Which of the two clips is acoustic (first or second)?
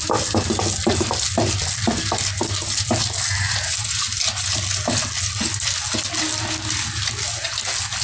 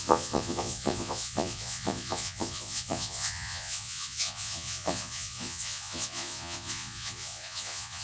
first